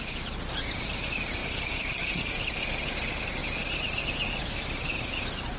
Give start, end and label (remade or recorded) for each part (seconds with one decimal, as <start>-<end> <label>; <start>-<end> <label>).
0.0-1.4 recorded; 1.4-2.7 remade; 2.7-3.4 recorded; 3.4-4.0 remade; 4.0-5.6 recorded